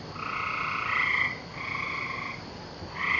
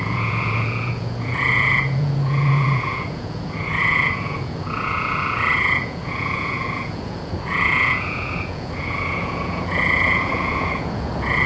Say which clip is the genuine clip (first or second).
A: first